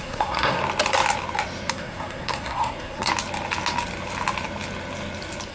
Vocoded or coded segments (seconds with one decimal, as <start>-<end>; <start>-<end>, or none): 0.0-0.6; 1.7-3.1